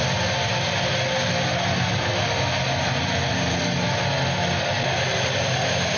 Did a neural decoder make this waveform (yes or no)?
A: no